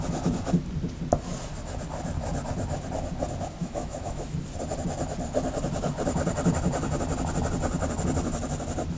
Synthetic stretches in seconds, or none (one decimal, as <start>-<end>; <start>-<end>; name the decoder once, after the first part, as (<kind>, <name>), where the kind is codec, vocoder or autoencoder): 3.6-4.2 (autoencoder, DAC-VAE)